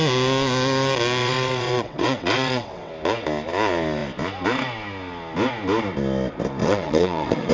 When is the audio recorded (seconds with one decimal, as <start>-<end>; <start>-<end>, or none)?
0.0-1.2; 2.9-6.6